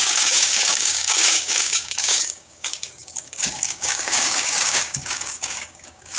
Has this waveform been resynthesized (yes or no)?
yes